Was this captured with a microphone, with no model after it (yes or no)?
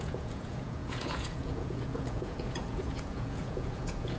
no